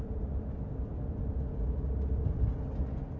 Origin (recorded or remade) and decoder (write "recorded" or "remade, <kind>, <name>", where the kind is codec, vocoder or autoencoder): recorded